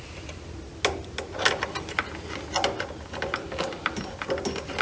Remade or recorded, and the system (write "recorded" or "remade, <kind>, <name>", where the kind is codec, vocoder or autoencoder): recorded